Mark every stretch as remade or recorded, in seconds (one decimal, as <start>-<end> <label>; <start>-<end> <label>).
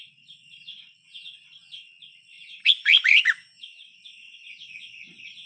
0.0-2.6 remade; 2.6-3.6 recorded; 3.6-5.5 remade